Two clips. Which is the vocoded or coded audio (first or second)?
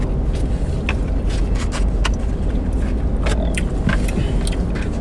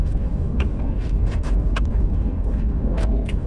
second